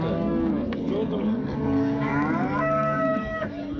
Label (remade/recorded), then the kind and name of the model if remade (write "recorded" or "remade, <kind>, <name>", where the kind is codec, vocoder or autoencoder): remade, codec, DAC